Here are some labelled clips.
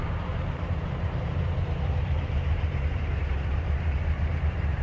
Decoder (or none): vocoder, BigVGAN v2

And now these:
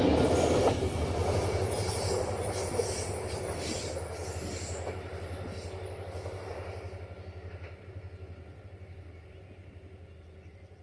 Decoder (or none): none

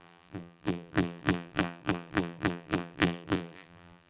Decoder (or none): vocoder, BigVGAN v2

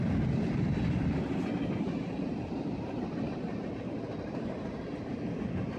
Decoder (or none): none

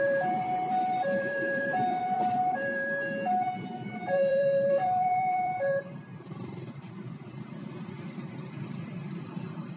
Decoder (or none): vocoder, BigVGAN v2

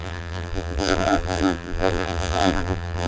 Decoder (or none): vocoder, BigVGAN v2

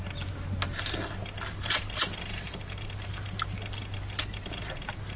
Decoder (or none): none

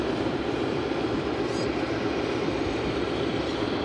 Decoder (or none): vocoder, BigVGAN v2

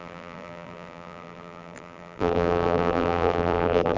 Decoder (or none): vocoder, BigVGAN v2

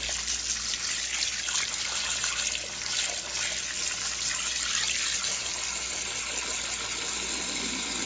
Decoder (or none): none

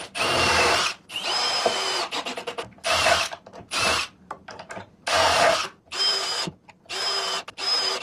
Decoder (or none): vocoder, BigVGAN v2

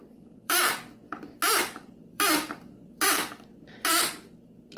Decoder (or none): vocoder, BigVGAN v2